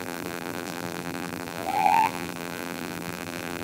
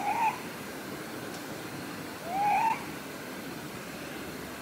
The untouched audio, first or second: second